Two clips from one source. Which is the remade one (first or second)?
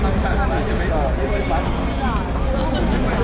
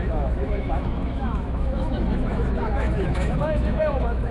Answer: second